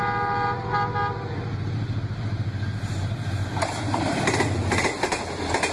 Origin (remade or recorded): recorded